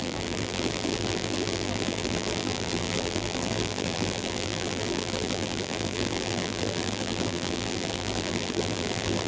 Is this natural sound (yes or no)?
no